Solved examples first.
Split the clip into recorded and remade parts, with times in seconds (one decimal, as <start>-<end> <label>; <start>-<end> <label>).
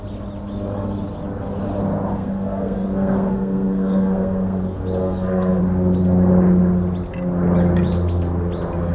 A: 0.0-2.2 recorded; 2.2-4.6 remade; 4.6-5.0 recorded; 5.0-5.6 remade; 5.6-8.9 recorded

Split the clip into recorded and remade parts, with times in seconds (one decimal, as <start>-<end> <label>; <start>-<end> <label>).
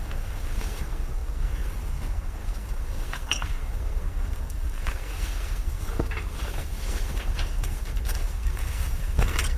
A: 0.0-9.6 remade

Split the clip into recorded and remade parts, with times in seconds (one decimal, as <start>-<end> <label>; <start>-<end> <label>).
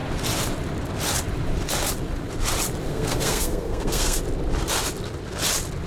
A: 0.0-2.9 recorded; 2.9-4.2 remade; 4.2-5.9 recorded